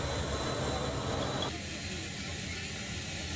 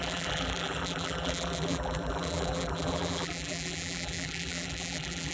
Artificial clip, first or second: second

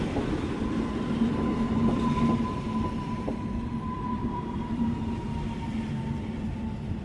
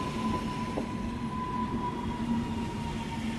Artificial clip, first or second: first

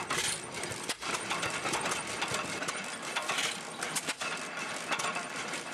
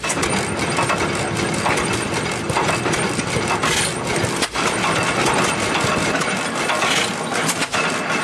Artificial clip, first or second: first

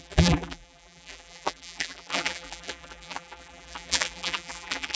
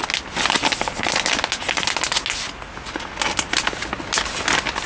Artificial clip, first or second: first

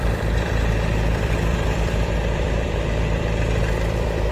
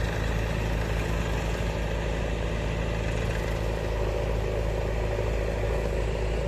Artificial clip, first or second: first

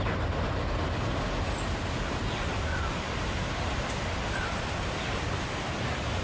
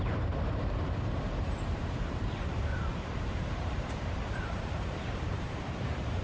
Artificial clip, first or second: second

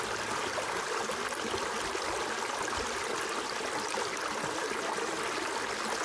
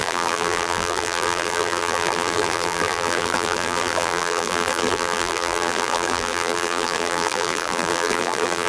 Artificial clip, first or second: second